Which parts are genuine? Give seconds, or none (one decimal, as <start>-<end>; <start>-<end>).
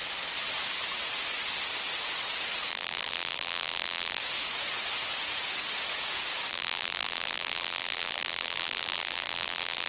0.0-2.7; 4.2-6.5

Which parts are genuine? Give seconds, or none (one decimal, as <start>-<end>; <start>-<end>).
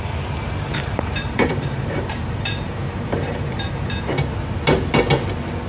0.0-0.7; 4.1-5.7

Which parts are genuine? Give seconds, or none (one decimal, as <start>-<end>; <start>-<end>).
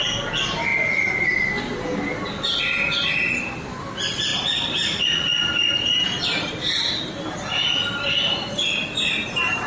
0.0-5.9; 7.1-7.5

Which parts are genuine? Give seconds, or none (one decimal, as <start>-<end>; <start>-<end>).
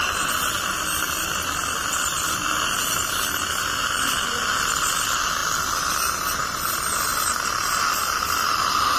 0.0-1.6; 2.5-6.4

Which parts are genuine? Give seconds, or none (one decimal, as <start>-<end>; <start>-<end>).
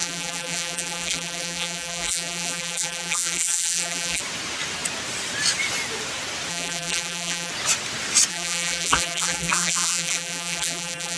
4.2-6.5; 7.5-8.3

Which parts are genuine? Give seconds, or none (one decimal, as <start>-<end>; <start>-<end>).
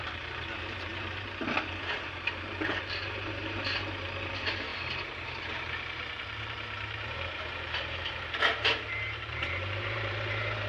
none